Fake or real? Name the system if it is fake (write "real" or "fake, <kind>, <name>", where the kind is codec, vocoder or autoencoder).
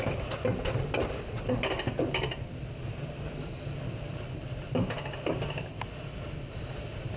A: real